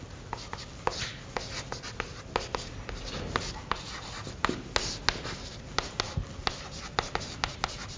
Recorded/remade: recorded